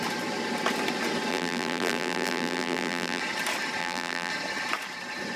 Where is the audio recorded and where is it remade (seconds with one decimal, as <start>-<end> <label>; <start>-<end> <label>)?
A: 0.0-1.3 recorded; 1.3-3.2 remade; 3.2-3.8 recorded; 3.8-4.3 remade; 4.3-5.4 recorded